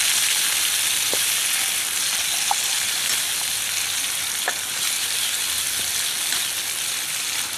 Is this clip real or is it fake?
real